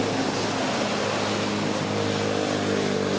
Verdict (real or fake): real